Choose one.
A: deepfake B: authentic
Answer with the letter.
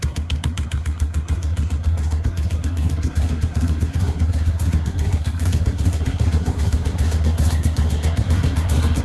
A